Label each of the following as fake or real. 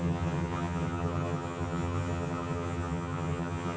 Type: fake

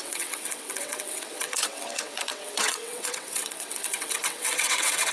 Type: fake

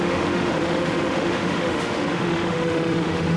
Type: fake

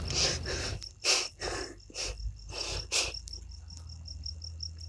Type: real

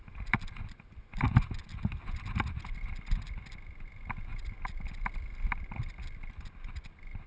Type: real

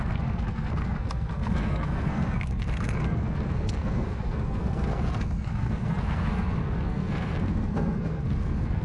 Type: fake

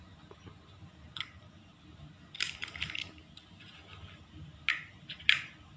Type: real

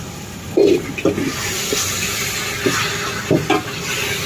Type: real